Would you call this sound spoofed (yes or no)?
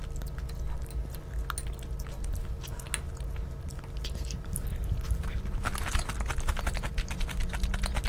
no